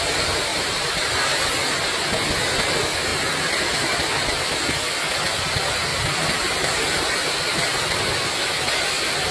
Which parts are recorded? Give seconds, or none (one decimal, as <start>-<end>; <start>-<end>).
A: 0.0-0.5; 1.4-3.1; 4.8-5.9; 8.0-9.3